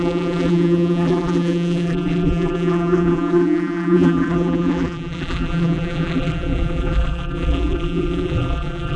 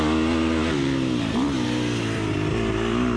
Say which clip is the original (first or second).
second